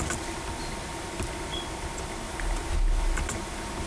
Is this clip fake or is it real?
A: real